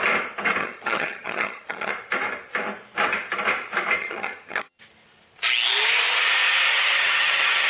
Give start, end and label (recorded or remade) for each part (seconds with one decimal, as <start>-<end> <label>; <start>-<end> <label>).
0.0-0.6 recorded; 0.6-1.9 remade; 1.9-4.0 recorded; 4.0-4.8 remade; 4.8-6.7 recorded; 6.7-7.7 remade

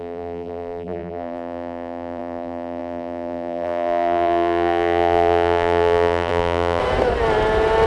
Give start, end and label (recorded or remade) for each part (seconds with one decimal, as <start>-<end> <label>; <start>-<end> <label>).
0.0-6.8 remade; 6.8-7.9 recorded

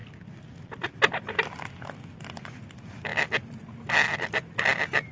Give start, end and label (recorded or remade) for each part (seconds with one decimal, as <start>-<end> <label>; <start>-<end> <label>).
0.0-5.1 recorded